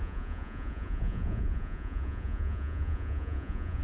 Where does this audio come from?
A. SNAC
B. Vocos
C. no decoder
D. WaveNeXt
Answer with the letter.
B